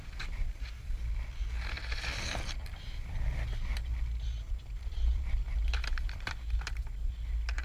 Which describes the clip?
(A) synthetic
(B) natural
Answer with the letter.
B